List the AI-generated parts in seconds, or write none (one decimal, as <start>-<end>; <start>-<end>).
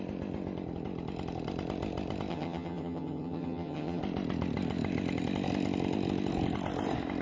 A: 2.3-4.0